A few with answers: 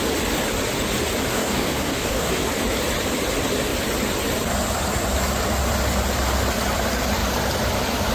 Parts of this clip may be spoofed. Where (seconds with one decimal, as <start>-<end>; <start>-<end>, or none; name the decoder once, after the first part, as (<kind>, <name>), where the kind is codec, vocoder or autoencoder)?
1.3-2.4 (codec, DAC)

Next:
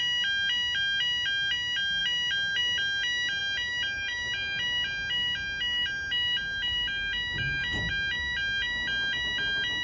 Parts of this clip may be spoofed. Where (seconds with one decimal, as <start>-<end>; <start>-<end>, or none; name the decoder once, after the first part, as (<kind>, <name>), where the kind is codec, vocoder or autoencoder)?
none

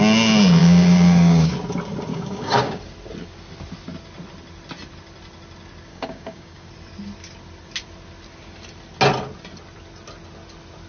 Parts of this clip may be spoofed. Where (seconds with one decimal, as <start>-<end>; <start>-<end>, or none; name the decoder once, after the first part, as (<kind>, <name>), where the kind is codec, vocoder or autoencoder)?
0.6-1.5 (codec, DAC); 2.1-2.8; 5.9-6.7

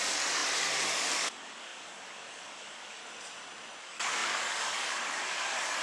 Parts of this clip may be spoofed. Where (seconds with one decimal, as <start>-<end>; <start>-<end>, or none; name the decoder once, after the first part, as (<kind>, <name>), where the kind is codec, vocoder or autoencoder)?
0.0-3.0 (codec, DAC); 3.8-5.8

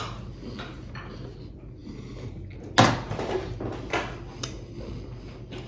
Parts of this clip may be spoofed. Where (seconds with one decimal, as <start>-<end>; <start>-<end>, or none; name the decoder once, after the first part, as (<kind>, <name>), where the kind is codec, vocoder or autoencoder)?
none